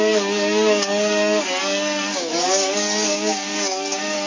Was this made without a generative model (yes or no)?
no